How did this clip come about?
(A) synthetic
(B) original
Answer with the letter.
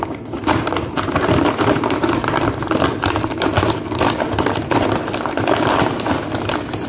A